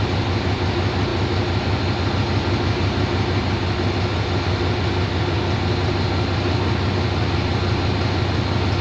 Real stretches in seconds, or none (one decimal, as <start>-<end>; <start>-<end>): 0.0-8.8